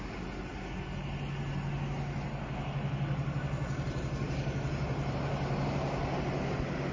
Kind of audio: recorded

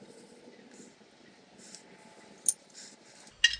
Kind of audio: recorded